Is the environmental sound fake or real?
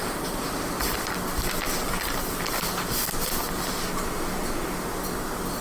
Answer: real